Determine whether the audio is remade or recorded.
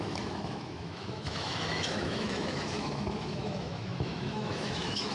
remade